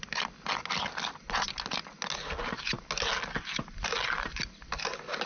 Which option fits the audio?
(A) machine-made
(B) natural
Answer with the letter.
B